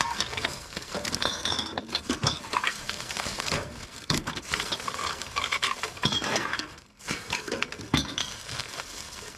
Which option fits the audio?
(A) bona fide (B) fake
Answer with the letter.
B